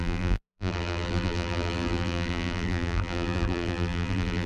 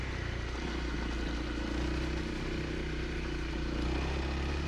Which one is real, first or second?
second